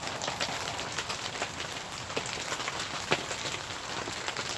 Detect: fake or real real